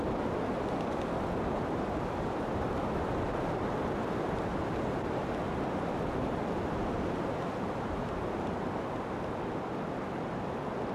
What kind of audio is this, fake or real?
real